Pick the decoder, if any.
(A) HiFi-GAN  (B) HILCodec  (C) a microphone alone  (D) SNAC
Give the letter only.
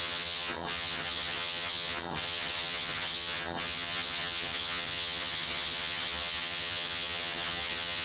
A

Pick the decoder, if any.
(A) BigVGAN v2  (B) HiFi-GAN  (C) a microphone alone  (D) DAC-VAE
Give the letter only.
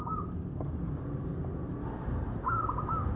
C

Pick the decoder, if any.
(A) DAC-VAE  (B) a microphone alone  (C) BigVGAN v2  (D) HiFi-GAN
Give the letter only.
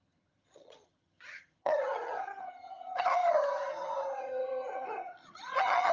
D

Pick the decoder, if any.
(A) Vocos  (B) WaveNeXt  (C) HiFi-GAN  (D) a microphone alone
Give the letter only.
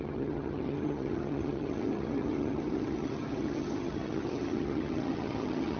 C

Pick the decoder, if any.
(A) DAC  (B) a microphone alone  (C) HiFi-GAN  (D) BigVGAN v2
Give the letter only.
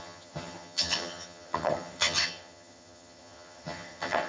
C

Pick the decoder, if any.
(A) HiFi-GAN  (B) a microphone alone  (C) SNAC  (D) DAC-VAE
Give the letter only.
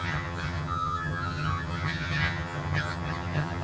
A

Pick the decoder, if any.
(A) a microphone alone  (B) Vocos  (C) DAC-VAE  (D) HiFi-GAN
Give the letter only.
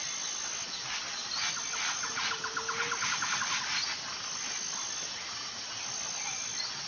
A